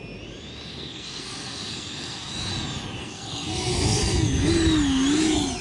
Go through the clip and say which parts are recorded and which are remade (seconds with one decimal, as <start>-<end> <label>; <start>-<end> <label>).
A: 0.0-0.7 recorded; 0.7-2.5 remade; 2.5-3.0 recorded; 3.0-4.5 remade; 4.5-5.6 recorded